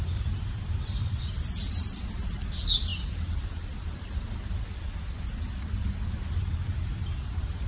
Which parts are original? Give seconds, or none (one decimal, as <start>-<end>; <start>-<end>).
0.0-7.7

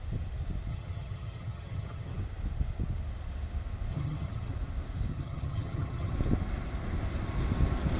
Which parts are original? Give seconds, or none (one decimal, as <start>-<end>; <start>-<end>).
0.0-0.7; 2.2-3.9; 4.5-5.1; 6.1-8.0

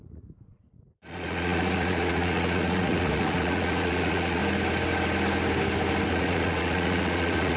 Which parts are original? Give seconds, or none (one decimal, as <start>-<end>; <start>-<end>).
4.4-6.1